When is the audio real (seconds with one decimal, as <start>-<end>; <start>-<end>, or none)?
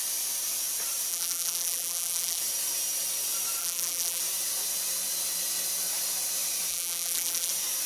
0.0-1.1; 2.4-3.6; 4.2-6.7; 7.5-7.9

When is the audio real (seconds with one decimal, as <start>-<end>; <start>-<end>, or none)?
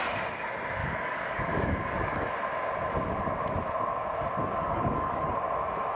0.0-0.8; 2.3-4.6; 5.3-6.0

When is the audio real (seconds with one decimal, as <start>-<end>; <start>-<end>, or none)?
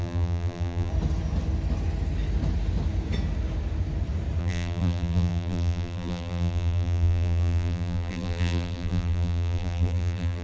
0.9-4.4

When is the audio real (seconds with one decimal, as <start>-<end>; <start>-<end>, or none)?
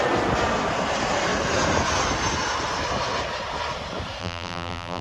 0.0-4.2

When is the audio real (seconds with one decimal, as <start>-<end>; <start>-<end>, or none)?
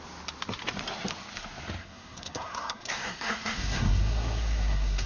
0.0-1.8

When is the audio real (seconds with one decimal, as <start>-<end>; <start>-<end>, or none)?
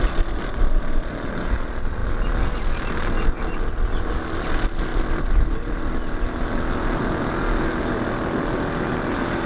0.0-9.5